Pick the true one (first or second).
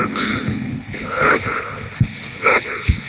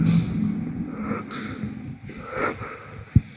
second